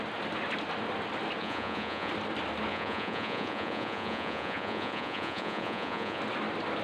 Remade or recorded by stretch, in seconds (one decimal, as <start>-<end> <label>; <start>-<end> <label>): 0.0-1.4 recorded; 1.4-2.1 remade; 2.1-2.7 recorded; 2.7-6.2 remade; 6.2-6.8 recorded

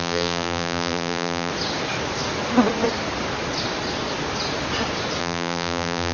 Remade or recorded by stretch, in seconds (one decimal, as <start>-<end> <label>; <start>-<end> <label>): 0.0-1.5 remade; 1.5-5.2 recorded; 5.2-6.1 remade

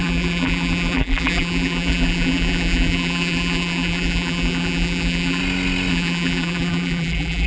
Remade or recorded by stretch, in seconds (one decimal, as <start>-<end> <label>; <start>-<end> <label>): 0.0-5.4 remade; 5.4-5.9 recorded; 5.9-7.5 remade

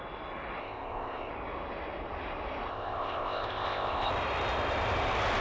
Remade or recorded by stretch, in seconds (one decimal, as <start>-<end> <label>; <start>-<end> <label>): 0.0-0.6 recorded; 0.6-1.3 remade; 1.3-2.7 recorded; 2.7-4.1 remade; 4.1-5.4 recorded